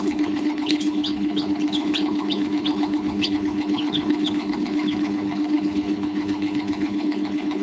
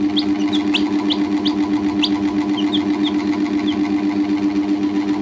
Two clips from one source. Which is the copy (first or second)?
first